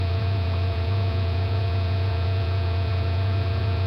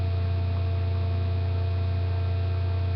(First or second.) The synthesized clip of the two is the first